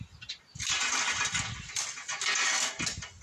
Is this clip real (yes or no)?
yes